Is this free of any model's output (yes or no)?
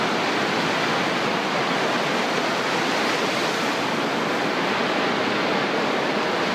yes